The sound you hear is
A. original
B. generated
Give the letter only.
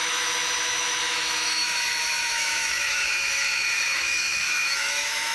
B